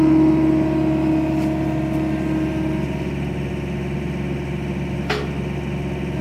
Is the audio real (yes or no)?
yes